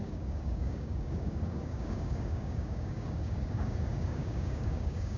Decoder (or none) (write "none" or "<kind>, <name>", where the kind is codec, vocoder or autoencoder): codec, DAC